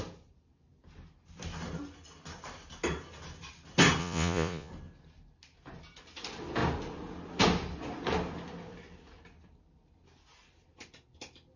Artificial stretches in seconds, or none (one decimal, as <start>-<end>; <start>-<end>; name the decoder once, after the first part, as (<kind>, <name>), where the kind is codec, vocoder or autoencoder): 4.0-4.7 (vocoder, Vocos)